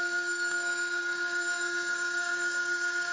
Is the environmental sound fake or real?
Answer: fake